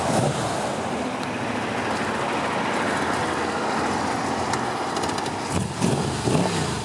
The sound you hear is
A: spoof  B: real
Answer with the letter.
B